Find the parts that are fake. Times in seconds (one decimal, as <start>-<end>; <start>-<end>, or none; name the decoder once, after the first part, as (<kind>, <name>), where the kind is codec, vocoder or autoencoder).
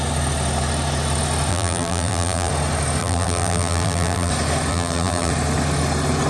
1.5-2.5 (vocoder, BigVGAN v2); 3.0-4.3; 4.7-5.3